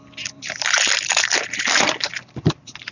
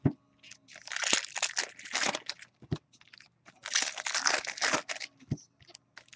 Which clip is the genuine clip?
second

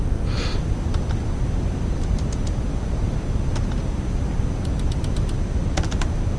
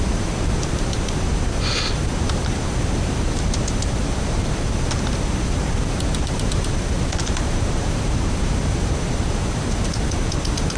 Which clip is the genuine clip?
first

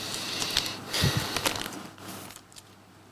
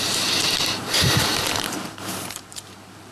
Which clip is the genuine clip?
first